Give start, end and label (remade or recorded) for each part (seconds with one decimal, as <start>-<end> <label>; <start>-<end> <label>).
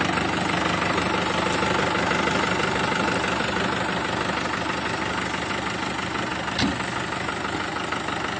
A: 0.0-8.4 recorded